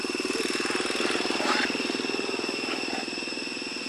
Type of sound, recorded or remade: recorded